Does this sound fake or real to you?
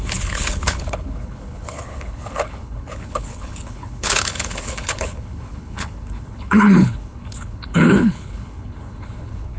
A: fake